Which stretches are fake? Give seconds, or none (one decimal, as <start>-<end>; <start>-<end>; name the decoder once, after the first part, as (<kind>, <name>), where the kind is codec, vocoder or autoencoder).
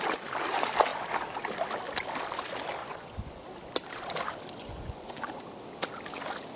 2.8-3.4 (vocoder, Vocos); 4.6-5.4